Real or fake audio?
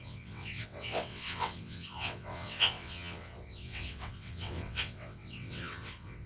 fake